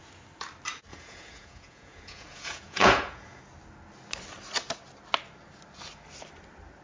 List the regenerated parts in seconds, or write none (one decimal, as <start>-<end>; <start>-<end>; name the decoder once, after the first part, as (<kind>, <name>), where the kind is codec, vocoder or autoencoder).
0.9-3.4 (vocoder, Vocos)